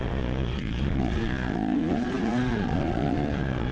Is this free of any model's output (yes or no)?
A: no